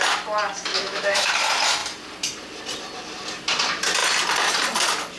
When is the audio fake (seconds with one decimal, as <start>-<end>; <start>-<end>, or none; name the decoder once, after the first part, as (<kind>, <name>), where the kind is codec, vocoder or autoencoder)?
0.7-1.3 (autoencoder, DAC-VAE)